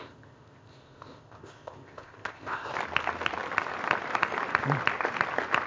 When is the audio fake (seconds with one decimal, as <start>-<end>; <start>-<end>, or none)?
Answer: 0.0-2.7